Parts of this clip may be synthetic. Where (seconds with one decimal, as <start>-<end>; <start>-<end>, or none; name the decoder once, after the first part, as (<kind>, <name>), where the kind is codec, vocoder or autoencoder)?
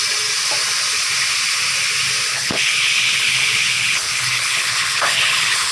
2.3-5.7 (codec, HILCodec)